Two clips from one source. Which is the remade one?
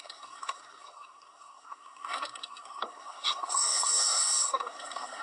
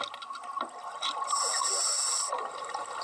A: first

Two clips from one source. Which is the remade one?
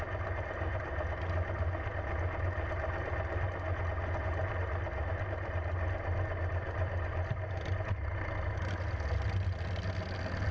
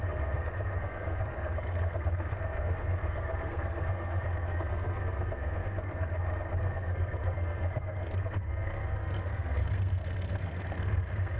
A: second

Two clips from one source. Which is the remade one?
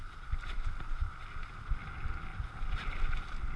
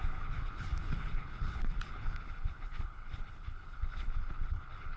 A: second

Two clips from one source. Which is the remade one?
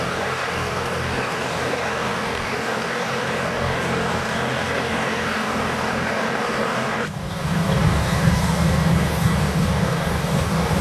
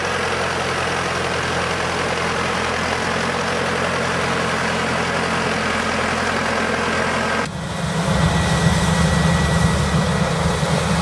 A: first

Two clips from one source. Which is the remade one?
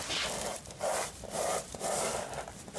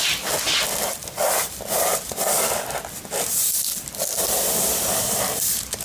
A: first